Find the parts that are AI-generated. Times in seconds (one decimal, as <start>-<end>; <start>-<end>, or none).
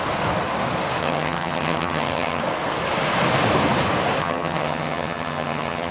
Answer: 1.0-2.4; 4.2-5.9